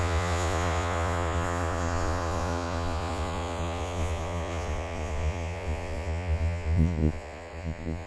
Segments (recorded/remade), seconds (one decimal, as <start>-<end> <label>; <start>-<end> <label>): 0.0-8.1 remade